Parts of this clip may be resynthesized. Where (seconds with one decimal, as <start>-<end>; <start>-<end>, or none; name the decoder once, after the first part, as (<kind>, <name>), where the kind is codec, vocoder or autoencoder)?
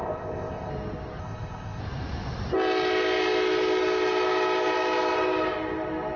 0.0-0.7 (codec, ZipCodec); 1.2-1.8